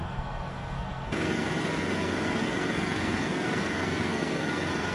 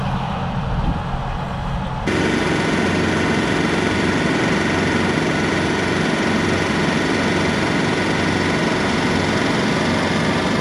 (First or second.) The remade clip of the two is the first